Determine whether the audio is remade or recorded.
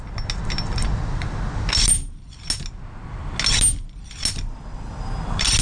recorded